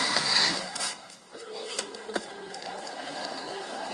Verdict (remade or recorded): remade